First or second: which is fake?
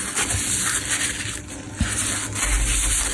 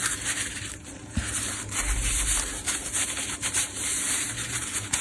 second